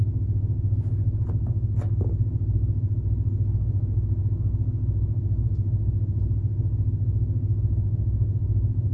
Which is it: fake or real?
real